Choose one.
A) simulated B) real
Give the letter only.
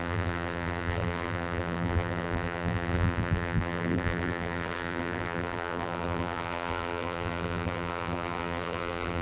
A